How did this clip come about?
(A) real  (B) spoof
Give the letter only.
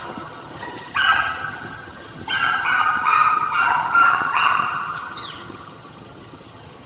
B